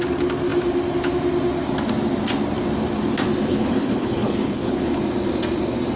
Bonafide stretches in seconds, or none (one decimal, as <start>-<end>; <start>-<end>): 0.0-3.5; 5.0-6.0